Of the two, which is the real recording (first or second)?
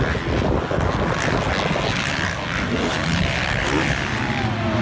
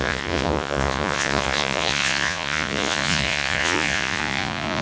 first